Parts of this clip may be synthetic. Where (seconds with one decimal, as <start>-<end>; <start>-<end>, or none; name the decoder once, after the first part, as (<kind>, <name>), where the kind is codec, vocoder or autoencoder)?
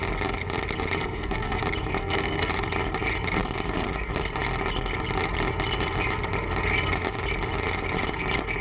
1.0-1.6 (codec, SNAC); 2.0-2.5